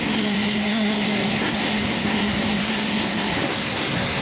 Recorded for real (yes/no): no